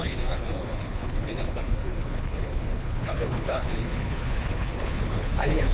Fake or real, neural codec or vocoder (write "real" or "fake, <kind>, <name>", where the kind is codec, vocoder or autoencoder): fake, codec, HILCodec